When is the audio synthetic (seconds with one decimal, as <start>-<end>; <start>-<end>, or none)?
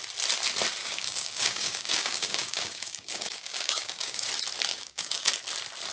0.8-4.3; 4.7-5.3